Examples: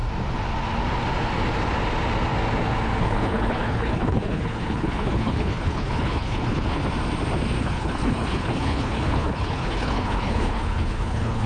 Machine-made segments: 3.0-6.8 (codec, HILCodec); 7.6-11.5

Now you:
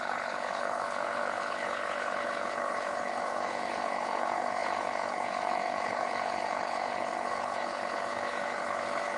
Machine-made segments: 0.0-9.2 (codec, HILCodec)